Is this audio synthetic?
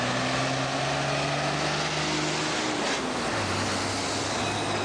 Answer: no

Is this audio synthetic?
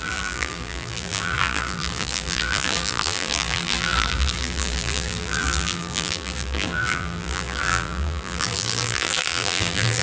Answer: yes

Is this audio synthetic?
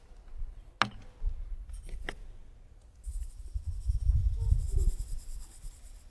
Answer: no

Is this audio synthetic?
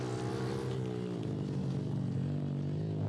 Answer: no